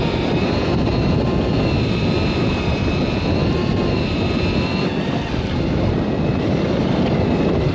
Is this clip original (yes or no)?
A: yes